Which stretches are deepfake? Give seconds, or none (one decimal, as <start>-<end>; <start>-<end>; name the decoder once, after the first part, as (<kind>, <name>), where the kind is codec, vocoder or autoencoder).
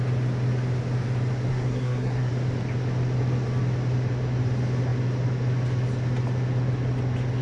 1.5-2.3 (codec, SNAC)